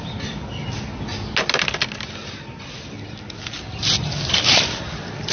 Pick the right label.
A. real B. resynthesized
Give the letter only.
A